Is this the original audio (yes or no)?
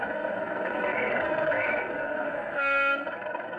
no